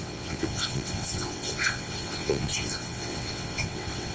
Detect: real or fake fake